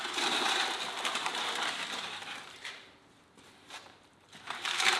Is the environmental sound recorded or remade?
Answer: remade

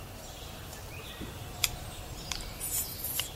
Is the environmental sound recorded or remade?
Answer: remade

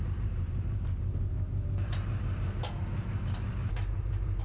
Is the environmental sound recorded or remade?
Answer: remade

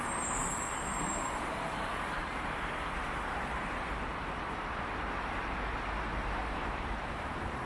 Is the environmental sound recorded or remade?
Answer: remade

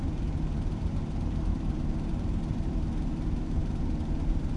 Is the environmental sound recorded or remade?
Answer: remade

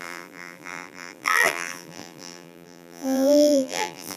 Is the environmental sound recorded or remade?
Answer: remade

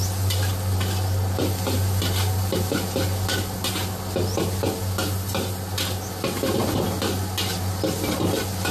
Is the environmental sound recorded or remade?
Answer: recorded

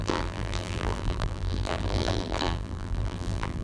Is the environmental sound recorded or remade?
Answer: remade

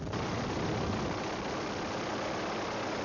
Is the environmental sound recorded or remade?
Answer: remade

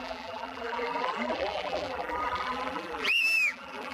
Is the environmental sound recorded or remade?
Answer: remade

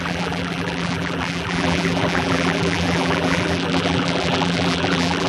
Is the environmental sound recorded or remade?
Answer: remade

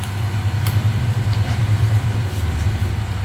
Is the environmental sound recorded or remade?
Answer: remade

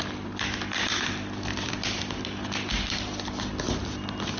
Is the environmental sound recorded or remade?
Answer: recorded